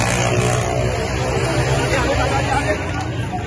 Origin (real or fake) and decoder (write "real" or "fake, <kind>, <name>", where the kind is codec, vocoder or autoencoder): real